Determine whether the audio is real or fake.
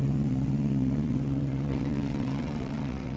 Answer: fake